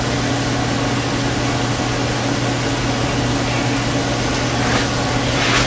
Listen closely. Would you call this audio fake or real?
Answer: real